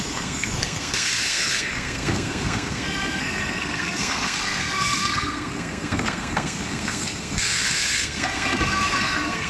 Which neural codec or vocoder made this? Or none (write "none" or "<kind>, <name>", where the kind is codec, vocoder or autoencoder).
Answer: codec, SNAC